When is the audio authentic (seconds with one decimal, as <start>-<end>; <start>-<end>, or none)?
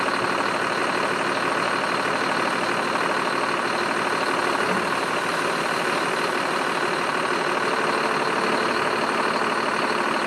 0.0-10.3